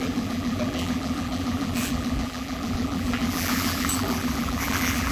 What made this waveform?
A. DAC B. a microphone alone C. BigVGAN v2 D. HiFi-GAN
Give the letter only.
C